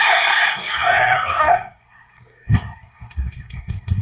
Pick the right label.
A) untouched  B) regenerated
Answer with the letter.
B